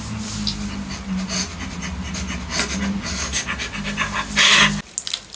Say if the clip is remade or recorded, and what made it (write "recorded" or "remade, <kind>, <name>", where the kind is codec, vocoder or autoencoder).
recorded